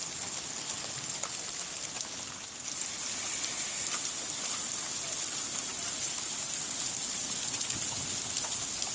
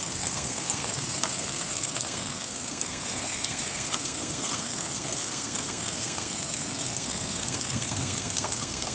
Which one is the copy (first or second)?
second